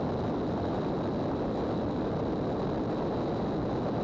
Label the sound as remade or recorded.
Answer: recorded